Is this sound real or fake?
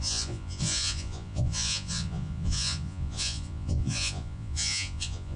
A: fake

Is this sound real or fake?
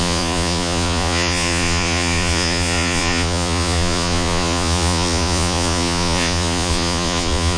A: fake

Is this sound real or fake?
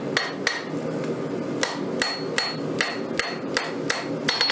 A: real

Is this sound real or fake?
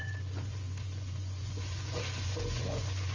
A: fake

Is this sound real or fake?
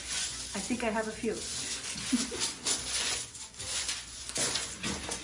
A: fake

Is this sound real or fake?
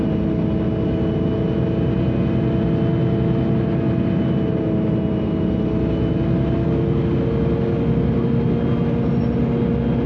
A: real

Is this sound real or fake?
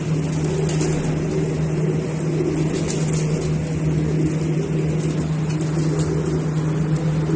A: real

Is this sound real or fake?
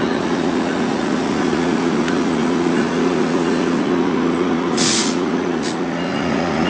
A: fake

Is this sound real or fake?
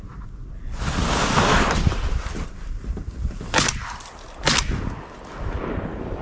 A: real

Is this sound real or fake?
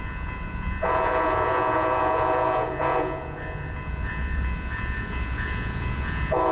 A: fake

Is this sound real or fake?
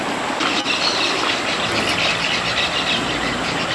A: real